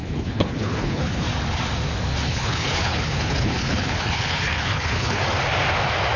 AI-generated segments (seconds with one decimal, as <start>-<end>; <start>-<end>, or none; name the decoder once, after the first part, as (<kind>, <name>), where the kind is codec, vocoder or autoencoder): 0.0-1.2 (codec, HILCodec); 2.1-5.2